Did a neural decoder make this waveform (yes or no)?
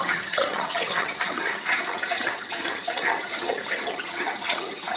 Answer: yes